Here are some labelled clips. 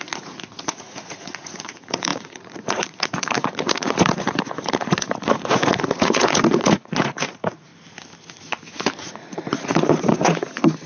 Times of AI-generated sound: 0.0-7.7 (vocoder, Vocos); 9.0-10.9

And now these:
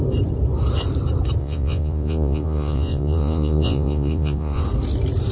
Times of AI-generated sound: 1.4-4.6 (vocoder, Vocos)